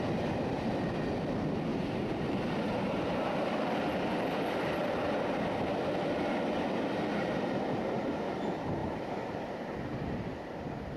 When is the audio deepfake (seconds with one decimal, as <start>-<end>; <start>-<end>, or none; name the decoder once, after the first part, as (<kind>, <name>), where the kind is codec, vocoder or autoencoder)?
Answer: 1.7-3.8 (vocoder, BigVGAN v2)